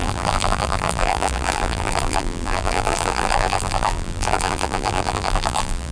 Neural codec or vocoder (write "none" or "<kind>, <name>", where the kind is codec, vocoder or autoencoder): vocoder, BigVGAN v2